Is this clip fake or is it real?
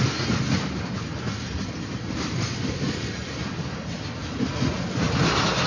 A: real